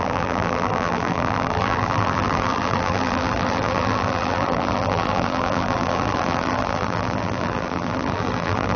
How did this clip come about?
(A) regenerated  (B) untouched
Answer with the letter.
A